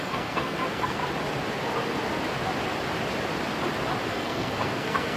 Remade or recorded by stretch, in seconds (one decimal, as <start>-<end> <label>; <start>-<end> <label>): 0.0-1.0 remade; 1.0-4.1 recorded; 4.1-5.2 remade